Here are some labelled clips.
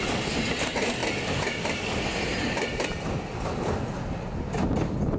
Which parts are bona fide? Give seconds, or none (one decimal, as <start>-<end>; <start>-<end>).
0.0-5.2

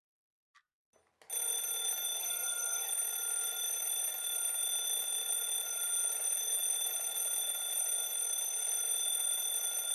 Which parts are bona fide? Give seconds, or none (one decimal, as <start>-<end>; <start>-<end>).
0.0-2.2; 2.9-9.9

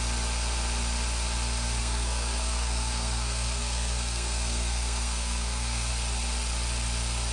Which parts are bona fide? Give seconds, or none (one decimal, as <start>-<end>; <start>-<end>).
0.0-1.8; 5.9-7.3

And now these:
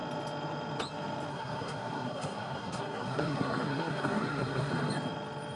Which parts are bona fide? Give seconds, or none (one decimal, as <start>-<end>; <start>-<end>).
0.0-1.3; 4.7-5.6

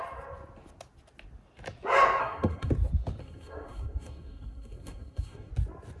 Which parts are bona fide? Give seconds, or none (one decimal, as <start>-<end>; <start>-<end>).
0.0-2.2; 2.7-3.2; 5.5-6.0